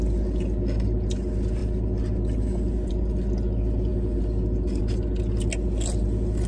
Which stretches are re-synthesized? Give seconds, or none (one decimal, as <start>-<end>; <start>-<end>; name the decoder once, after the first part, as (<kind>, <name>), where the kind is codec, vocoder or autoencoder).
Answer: none